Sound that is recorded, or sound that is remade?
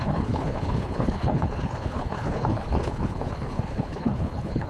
remade